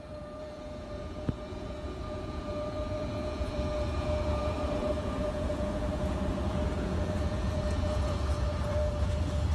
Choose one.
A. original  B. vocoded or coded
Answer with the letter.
B